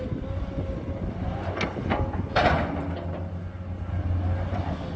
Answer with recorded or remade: recorded